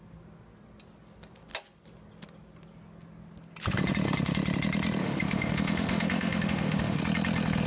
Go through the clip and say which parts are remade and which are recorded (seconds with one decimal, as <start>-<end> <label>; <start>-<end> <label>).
0.0-5.0 recorded; 5.0-7.0 remade; 7.0-7.7 recorded